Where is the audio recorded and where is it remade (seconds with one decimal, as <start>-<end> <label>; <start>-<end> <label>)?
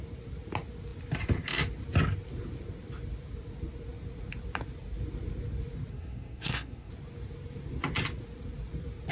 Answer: 0.0-5.9 recorded; 5.9-6.9 remade; 6.9-9.1 recorded